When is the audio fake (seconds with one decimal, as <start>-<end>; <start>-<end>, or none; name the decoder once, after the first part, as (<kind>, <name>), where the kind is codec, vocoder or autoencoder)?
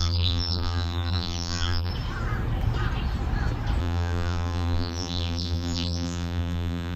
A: 0.0-1.9 (vocoder, BigVGAN v2); 3.8-7.0